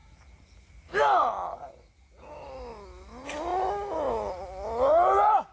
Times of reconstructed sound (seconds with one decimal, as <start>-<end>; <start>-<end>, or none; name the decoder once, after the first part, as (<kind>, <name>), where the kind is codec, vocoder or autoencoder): none